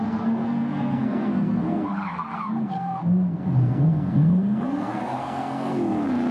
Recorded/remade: remade